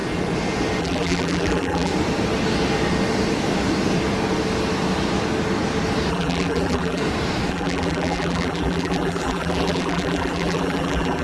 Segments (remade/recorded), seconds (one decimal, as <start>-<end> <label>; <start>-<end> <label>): 0.0-0.8 recorded; 0.8-1.9 remade; 1.9-6.1 recorded; 6.1-7.0 remade; 7.0-7.5 recorded; 7.5-11.2 remade